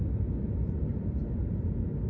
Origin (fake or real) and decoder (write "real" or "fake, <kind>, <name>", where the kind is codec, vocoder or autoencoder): real